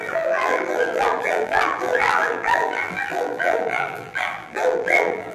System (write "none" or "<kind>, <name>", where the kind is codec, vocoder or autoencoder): vocoder, BigVGAN v2